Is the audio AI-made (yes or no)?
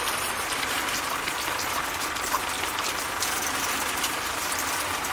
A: no